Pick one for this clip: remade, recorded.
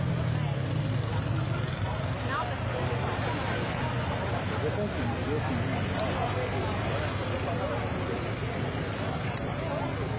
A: recorded